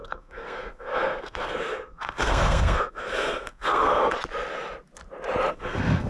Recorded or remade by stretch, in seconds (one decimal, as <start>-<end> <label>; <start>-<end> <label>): 0.0-4.0 remade; 4.0-5.5 recorded; 5.5-6.1 remade